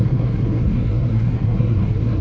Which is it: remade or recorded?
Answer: remade